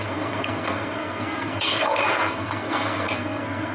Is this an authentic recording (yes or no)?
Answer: no